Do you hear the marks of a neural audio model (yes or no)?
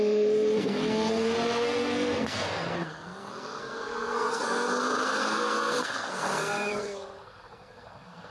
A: yes